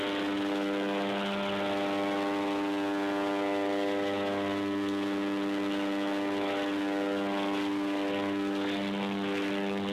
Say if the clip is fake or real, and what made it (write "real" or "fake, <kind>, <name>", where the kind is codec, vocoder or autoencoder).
real